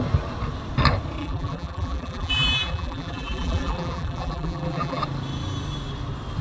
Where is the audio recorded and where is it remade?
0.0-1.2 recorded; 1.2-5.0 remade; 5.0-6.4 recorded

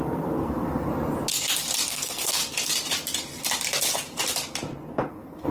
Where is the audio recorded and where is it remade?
0.0-0.9 remade; 0.9-1.9 recorded; 1.9-2.4 remade; 2.4-4.9 recorded; 4.9-5.5 remade

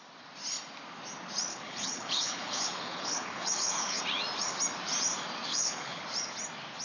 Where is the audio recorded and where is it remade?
0.0-1.5 recorded; 1.5-4.0 remade; 4.0-5.5 recorded; 5.5-6.0 remade; 6.0-6.8 recorded